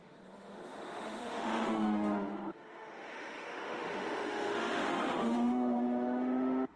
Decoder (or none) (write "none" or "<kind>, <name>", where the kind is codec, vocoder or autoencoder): autoencoder, DAC-VAE